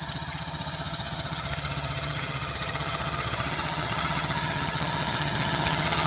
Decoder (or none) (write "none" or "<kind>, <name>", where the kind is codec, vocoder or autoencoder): vocoder, HiFi-GAN